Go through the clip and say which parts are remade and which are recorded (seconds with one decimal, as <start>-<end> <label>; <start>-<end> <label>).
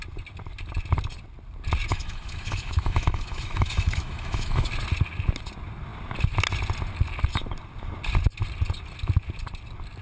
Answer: 0.0-1.9 recorded; 1.9-4.7 remade; 4.7-10.0 recorded